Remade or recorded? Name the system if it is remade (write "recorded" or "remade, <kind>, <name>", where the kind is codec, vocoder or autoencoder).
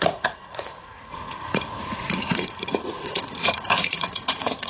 remade, vocoder, Vocos